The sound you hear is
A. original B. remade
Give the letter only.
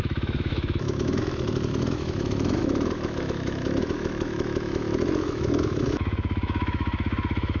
B